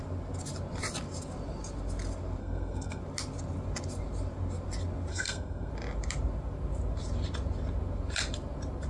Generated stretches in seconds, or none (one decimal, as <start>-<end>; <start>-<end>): 2.4-3.0; 5.1-5.7